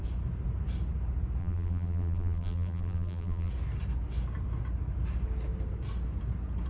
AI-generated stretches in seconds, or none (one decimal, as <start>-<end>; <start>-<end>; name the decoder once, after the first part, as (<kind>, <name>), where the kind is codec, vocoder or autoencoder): 1.4-3.5 (vocoder, BigVGAN v2)